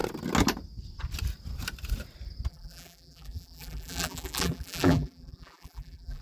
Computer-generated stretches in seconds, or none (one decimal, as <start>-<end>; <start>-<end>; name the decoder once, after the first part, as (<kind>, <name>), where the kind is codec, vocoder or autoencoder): 2.5-6.2 (vocoder, BigVGAN v2)